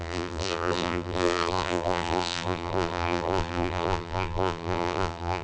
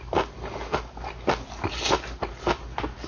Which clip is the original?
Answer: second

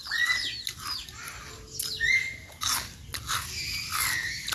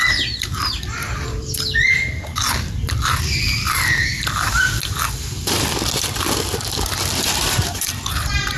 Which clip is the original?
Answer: first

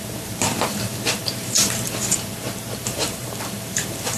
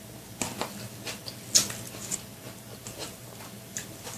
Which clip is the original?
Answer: second